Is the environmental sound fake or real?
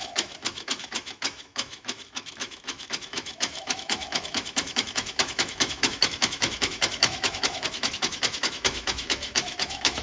fake